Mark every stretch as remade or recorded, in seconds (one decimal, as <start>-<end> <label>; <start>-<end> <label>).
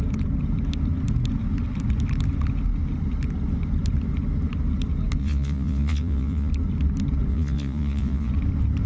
0.0-5.2 recorded; 5.2-6.5 remade; 6.5-7.3 recorded; 7.3-8.3 remade; 8.3-8.9 recorded